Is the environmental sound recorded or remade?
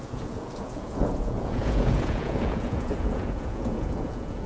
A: remade